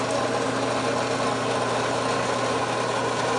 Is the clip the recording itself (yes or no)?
yes